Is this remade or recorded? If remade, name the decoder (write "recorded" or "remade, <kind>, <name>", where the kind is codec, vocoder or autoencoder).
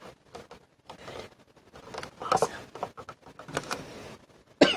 recorded